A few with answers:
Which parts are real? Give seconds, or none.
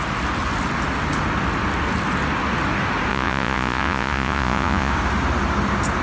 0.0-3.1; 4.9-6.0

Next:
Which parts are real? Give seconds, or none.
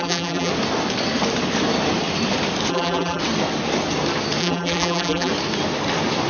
0.5-2.7; 3.2-4.4; 5.3-6.3